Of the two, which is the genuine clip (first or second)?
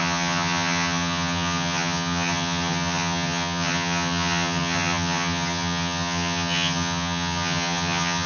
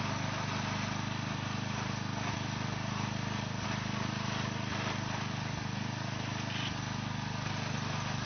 second